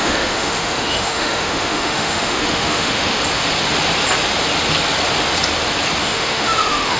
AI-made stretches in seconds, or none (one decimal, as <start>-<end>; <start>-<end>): 0.0-3.2; 6.0-7.0